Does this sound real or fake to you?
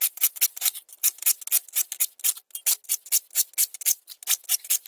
real